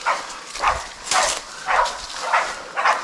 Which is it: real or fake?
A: fake